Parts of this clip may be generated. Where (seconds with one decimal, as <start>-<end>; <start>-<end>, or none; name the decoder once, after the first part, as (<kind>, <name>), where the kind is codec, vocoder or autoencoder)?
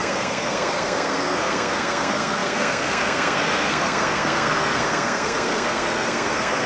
0.0-6.7 (codec, SNAC)